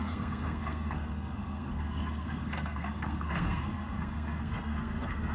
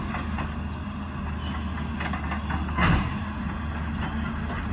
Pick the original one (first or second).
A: second